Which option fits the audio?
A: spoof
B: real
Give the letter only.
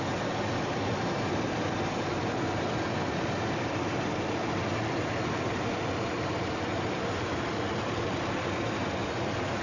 B